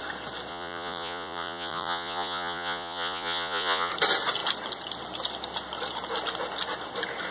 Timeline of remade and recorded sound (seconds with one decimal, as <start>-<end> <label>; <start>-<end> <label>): 0.0-0.5 recorded; 0.5-3.9 remade; 3.9-7.3 recorded